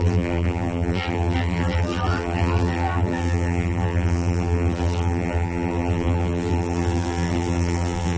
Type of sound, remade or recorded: remade